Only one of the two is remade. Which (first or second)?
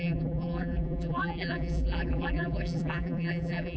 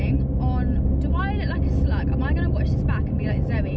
first